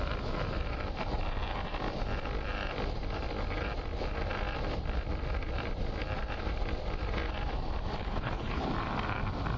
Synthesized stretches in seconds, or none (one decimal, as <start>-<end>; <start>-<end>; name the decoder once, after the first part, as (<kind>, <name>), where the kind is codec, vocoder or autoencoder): 8.0-8.6 (codec, HILCodec)